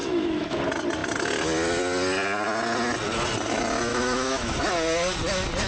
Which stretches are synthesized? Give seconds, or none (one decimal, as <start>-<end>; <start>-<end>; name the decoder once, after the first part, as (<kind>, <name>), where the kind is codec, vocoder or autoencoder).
0.0-0.6 (autoencoder, DAC-VAE); 3.9-4.6